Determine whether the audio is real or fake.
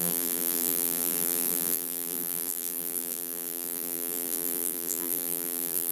fake